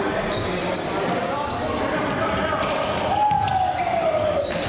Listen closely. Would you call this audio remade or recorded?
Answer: recorded